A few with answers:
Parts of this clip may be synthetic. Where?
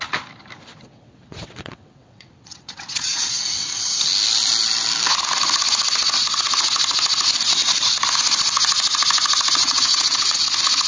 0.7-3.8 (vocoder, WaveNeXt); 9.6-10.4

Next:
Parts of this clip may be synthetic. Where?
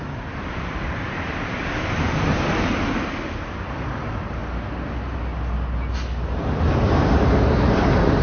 0.0-4.4 (vocoder, BigVGAN v2); 7.1-8.2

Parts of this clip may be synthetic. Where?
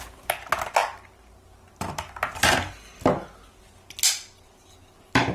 none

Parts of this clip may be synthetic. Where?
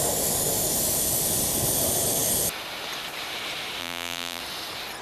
3.8-4.4 (vocoder, BigVGAN v2)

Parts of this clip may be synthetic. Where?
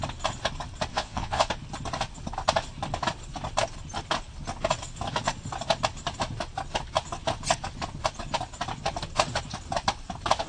0.9-1.5 (vocoder, Vocos)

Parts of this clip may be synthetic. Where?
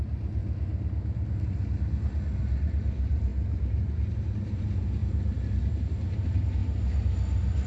0.0-0.4 (vocoder, BigVGAN v2); 2.4-5.0; 5.6-6.6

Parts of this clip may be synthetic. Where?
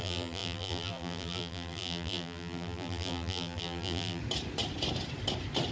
0.0-4.2 (vocoder, BigVGAN v2)